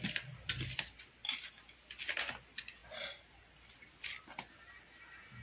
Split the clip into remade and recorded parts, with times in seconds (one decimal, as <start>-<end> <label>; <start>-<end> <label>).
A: 0.0-1.2 recorded; 1.2-1.9 remade; 1.9-5.4 recorded